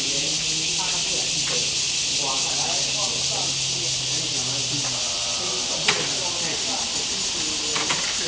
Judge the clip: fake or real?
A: real